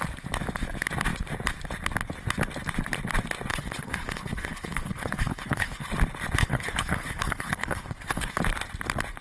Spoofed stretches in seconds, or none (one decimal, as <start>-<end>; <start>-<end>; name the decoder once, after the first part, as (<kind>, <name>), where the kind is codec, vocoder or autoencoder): 3.5-5.9 (codec, HILCodec); 6.4-8.4